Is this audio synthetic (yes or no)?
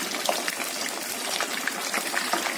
no